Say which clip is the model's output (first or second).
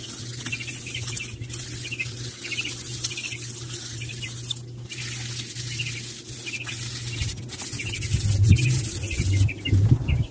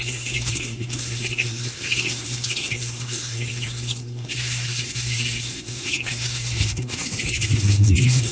second